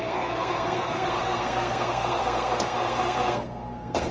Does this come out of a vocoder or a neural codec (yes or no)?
yes